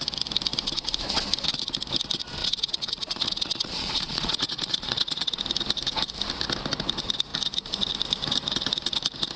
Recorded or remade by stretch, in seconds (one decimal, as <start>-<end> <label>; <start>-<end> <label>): 0.0-2.4 recorded; 2.4-5.4 remade; 5.4-9.4 recorded